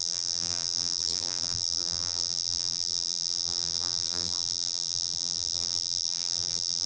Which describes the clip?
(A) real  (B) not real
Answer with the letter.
B